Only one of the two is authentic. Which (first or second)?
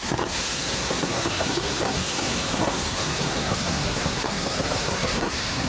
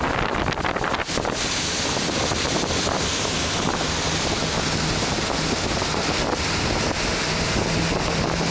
second